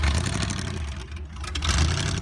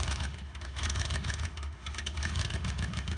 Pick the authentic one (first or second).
first